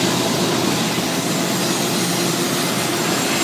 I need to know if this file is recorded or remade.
recorded